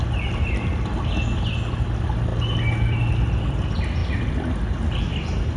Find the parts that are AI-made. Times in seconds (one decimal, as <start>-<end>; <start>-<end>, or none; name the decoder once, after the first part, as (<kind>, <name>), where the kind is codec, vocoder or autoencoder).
none